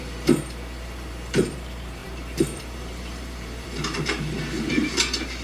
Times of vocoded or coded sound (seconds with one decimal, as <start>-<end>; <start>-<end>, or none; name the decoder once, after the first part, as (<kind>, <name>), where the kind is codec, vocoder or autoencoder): 0.0-5.4 (vocoder, BigVGAN v2)